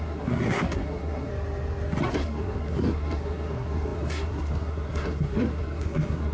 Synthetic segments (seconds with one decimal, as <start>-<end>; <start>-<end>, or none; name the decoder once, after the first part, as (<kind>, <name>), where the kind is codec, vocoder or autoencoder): 0.0-1.3 (codec, SNAC); 2.1-6.3